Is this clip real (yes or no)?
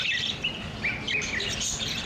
no